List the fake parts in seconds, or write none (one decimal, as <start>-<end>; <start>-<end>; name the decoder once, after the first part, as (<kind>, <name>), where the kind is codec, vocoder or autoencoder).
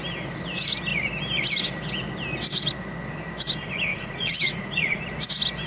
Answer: 3.9-5.0 (vocoder, Vocos)